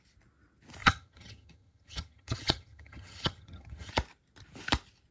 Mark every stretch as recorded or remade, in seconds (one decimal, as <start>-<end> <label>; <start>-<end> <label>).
0.0-0.8 recorded; 0.8-3.9 remade; 3.9-5.1 recorded